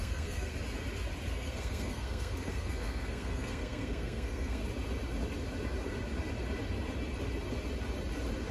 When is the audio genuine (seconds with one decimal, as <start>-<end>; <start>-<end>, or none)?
0.5-1.3; 4.6-8.5